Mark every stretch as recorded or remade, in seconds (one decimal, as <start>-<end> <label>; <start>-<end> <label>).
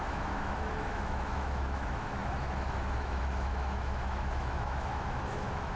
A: 0.0-5.8 remade